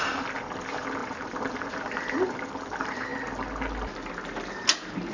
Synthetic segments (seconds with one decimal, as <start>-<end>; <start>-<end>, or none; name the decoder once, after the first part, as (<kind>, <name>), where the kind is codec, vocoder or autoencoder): 0.0-3.1 (vocoder, BigVGAN v2)

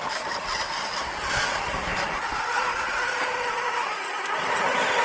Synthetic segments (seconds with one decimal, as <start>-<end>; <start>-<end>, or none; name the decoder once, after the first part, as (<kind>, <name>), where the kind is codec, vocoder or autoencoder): none

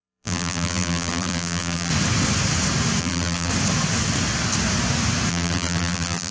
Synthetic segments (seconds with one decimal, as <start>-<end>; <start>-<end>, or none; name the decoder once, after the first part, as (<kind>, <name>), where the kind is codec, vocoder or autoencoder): 0.0-1.9 (vocoder, BigVGAN v2); 3.0-3.5; 5.3-6.3

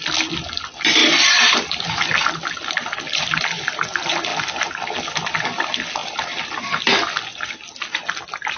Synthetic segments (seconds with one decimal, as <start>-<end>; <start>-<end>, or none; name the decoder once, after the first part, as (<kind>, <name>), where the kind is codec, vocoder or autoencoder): 1.0-1.8 (vocoder, BigVGAN v2)

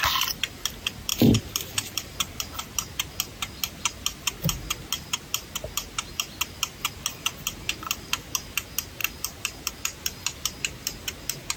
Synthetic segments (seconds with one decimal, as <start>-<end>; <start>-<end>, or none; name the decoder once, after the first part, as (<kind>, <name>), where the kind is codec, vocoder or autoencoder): 1.1-2.6 (vocoder, BigVGAN v2); 9.0-9.7

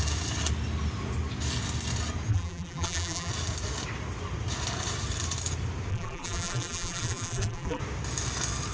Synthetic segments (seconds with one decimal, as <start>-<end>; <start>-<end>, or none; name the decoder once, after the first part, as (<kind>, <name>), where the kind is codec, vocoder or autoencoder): 2.3-3.3 (vocoder, BigVGAN v2); 5.9-7.8

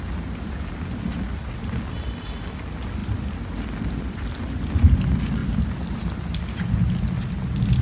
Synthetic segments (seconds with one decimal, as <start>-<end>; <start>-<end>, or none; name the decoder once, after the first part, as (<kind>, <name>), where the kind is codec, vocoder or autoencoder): 5.4-6.4 (vocoder, BigVGAN v2)